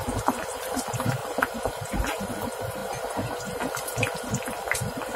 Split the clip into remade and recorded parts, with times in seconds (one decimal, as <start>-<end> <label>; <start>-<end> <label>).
0.0-1.2 recorded; 1.2-1.7 remade; 1.7-5.2 recorded